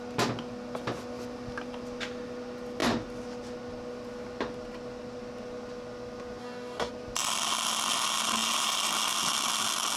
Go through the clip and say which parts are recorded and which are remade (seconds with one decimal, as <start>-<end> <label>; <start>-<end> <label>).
0.0-6.4 recorded; 6.4-6.9 remade; 6.9-10.0 recorded